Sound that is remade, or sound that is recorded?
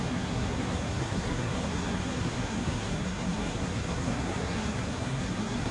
remade